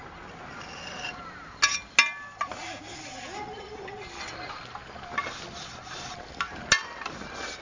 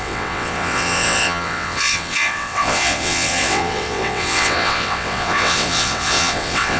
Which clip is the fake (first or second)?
second